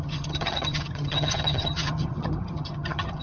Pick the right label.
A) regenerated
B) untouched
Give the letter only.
A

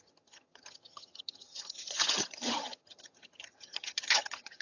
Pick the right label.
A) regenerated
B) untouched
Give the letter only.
A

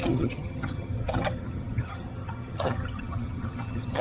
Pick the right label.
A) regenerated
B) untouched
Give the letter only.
A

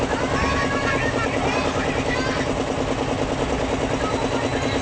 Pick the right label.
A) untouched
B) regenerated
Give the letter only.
A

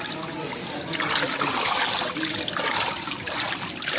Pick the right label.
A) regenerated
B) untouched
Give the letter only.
B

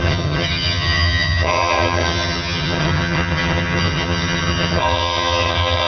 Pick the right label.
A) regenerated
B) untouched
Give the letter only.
A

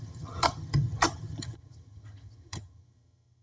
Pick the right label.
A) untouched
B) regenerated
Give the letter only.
B